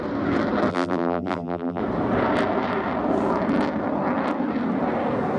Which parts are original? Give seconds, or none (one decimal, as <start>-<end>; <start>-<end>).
0.0-0.7; 1.8-5.4